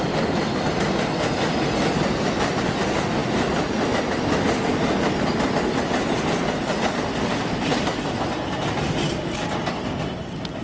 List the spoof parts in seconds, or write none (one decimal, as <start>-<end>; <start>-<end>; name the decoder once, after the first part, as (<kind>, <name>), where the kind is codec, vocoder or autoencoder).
none